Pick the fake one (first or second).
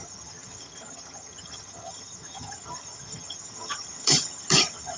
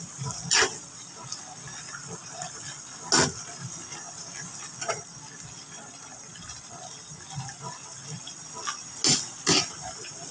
first